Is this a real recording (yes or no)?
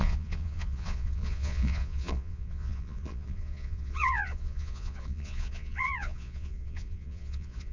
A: no